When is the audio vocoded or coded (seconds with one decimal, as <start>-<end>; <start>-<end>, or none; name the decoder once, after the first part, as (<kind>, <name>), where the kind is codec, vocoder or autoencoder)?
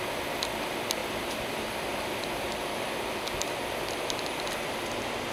1.0-4.2 (vocoder, BigVGAN v2)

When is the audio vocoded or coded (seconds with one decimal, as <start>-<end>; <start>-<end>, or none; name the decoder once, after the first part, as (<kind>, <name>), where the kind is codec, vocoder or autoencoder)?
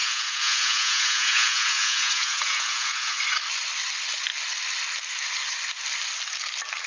0.0-3.2 (vocoder, Vocos)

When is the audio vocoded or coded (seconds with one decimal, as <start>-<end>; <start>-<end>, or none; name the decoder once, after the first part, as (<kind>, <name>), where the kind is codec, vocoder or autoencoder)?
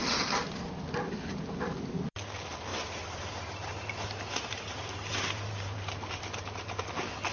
2.7-6.8 (vocoder, BigVGAN v2)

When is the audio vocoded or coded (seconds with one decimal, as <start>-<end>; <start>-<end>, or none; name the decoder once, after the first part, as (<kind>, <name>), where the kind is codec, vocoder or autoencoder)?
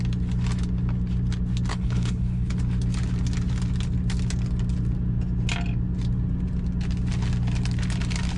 1.7-2.5 (codec, HILCodec)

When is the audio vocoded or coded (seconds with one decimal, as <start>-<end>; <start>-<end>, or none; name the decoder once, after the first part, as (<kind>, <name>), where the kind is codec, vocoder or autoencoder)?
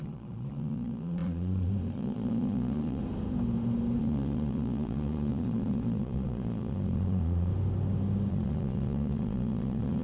0.0-3.0 (vocoder, Vocos); 4.0-7.5; 8.3-10.0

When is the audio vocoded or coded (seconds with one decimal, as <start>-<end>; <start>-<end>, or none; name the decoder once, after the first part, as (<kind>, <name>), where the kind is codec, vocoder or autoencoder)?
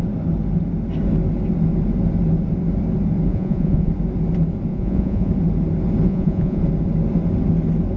3.3-3.9 (vocoder, Vocos); 4.7-5.3; 6.1-6.6